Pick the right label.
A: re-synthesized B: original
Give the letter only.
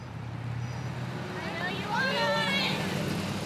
B